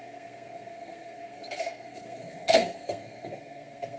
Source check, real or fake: fake